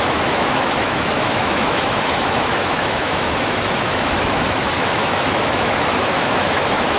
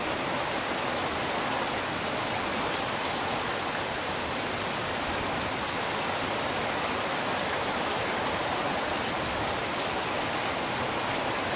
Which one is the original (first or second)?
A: second